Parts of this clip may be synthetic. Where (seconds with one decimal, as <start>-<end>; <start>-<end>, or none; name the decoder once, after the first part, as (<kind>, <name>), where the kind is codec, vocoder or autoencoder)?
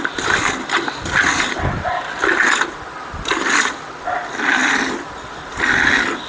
none